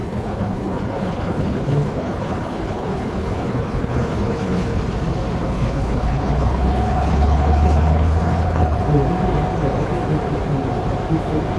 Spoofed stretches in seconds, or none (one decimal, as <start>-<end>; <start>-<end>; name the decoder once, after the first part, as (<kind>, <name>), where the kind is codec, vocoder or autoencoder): 0.0-4.8 (codec, HILCodec); 5.4-8.8